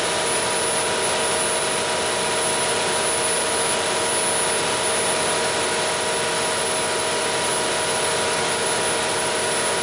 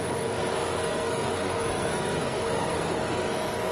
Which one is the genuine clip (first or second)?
first